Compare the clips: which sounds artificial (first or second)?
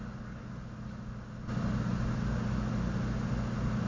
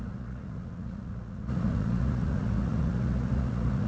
second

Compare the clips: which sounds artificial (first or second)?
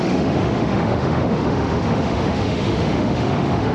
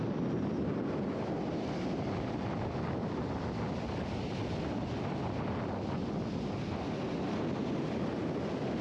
first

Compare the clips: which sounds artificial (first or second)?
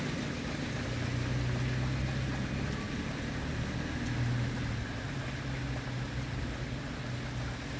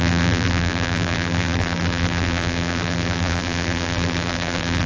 second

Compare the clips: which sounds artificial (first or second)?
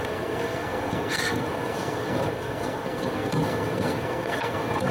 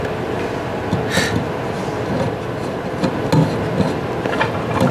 first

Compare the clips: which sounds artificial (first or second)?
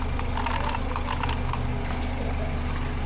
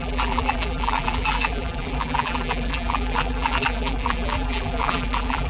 second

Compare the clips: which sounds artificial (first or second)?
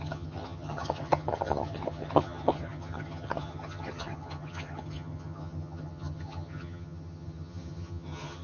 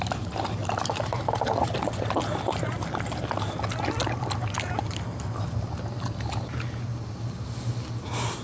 first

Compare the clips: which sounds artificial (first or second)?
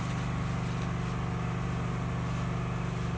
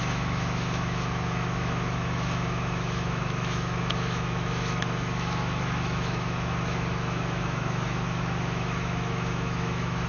second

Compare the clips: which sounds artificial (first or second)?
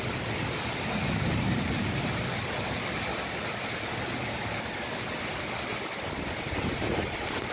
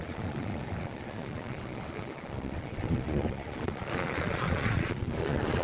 second